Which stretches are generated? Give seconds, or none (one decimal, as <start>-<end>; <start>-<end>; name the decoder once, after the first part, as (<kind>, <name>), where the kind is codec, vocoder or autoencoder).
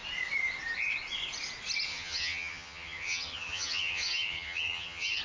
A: 1.9-5.2 (vocoder, HiFi-GAN)